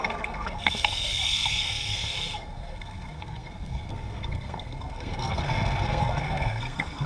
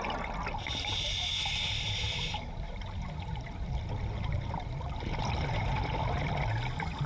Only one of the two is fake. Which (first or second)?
first